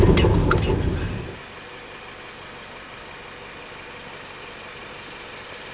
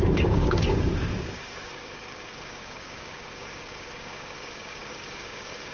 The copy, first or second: second